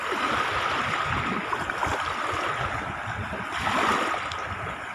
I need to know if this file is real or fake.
real